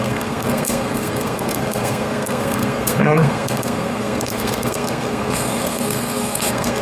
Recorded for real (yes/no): no